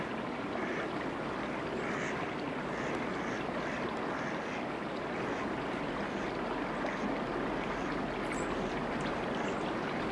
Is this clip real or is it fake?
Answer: real